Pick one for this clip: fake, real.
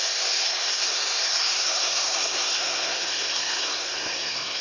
fake